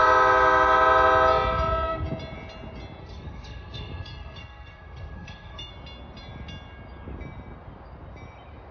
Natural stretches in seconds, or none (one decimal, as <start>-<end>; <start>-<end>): 0.0-3.0; 5.7-8.7